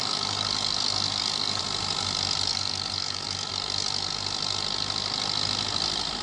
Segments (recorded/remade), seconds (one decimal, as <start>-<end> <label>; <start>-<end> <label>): 0.0-1.6 remade; 1.6-2.5 recorded; 2.5-3.5 remade; 3.5-6.2 recorded